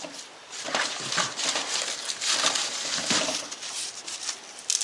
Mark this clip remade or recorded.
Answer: remade